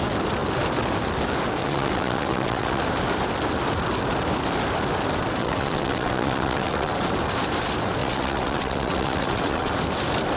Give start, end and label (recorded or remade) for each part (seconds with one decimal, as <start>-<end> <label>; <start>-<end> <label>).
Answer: 0.0-1.6 recorded; 1.6-2.8 remade; 2.8-5.4 recorded; 5.4-6.9 remade; 6.9-8.0 recorded; 8.0-9.7 remade; 9.7-10.4 recorded